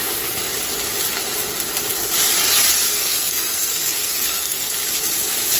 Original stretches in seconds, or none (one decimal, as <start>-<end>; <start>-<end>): 0.0-2.9; 4.7-5.6